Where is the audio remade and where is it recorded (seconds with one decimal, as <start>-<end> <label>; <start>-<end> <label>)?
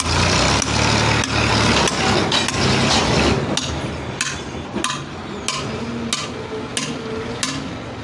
0.0-8.0 recorded